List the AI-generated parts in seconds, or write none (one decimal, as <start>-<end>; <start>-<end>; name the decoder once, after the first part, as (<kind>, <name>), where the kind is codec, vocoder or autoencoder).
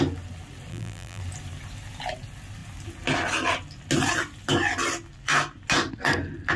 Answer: 0.7-1.2 (vocoder, BigVGAN v2)